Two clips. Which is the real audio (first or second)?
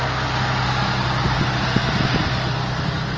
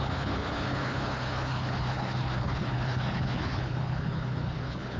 first